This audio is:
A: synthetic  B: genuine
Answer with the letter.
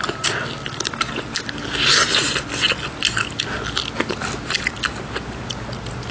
B